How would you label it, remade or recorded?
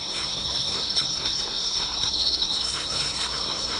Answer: remade